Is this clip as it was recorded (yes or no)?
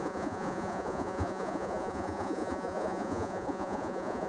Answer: no